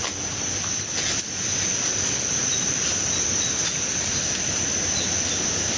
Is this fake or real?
real